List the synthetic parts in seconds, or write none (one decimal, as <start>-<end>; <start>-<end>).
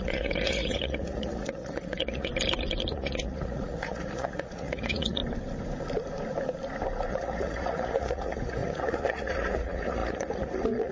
0.0-2.3; 2.9-5.2; 7.1-10.9